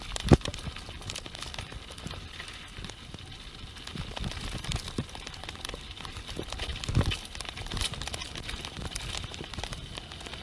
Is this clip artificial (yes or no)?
no